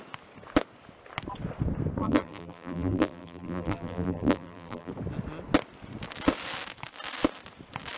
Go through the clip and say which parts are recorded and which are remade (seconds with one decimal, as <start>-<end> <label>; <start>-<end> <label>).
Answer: 0.0-2.0 recorded; 2.0-4.9 remade; 4.9-8.0 recorded